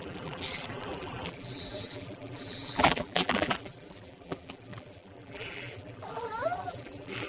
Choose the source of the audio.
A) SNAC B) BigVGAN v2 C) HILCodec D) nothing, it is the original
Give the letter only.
B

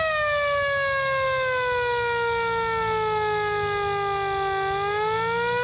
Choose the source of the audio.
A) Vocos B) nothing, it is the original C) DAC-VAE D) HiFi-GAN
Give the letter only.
B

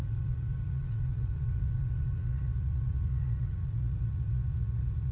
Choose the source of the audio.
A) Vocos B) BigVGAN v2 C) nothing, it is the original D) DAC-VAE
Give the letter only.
A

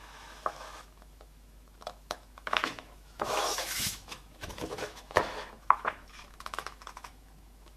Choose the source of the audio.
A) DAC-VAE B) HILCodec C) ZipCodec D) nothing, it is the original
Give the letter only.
A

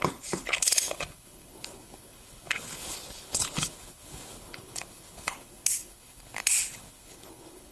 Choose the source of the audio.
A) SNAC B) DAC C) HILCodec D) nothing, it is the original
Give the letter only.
C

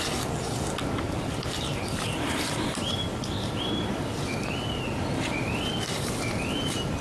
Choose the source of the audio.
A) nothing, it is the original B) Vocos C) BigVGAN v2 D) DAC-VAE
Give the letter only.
A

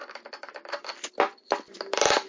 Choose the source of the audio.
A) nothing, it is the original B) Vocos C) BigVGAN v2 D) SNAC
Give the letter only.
A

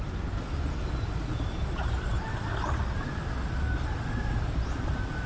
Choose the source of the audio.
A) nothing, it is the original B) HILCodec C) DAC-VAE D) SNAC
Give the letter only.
A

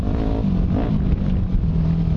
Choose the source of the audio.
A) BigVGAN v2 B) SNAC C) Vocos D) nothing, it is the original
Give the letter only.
D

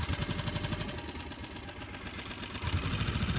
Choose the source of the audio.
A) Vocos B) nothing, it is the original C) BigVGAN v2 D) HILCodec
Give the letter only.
B